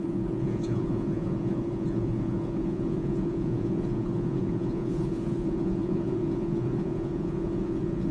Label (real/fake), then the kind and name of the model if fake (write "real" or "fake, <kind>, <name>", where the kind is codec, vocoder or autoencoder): fake, vocoder, Vocos